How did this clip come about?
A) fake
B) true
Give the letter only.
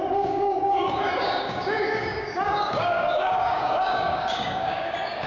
A